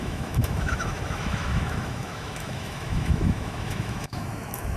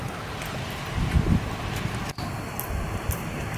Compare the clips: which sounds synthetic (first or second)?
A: first